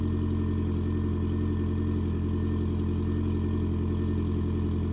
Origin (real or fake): real